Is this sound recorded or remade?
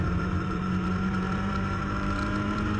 remade